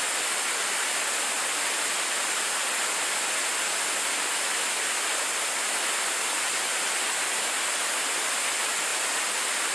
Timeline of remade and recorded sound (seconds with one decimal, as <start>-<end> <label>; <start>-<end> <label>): 0.0-9.7 recorded